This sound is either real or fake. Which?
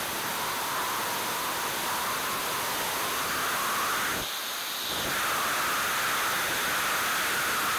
real